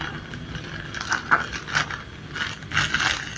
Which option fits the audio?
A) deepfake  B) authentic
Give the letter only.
B